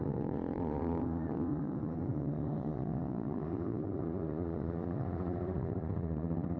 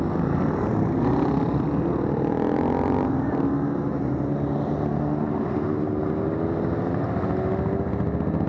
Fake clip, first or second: first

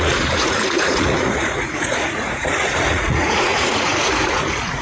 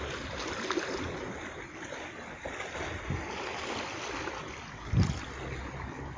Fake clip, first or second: first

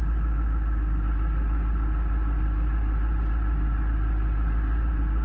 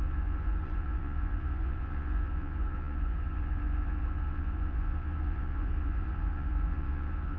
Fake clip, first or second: second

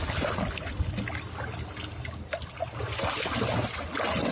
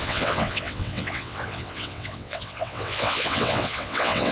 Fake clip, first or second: second